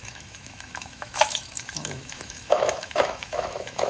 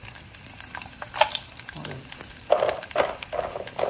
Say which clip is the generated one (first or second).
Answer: first